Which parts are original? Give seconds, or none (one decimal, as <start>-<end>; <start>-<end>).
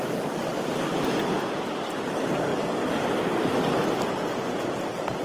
0.0-0.9; 1.4-5.2